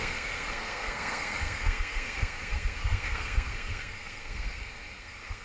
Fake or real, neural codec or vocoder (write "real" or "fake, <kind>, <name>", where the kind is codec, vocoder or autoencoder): fake, codec, SNAC